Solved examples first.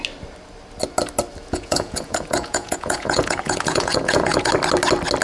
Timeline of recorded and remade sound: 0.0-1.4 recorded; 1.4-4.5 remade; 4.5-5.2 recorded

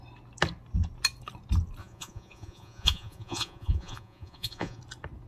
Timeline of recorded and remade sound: 0.0-1.8 recorded; 1.8-4.8 remade; 4.8-5.3 recorded

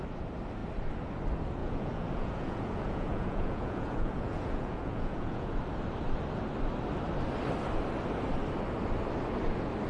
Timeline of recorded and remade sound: 0.0-1.6 recorded; 1.6-5.6 remade; 5.6-9.9 recorded